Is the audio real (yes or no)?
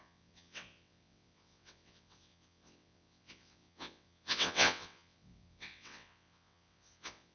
no